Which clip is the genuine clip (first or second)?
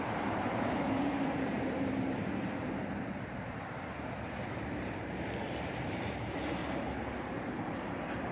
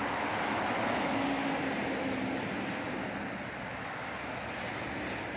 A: second